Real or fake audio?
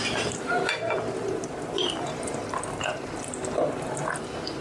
real